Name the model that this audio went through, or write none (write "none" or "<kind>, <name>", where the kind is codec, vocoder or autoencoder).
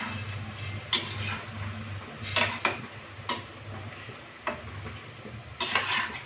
none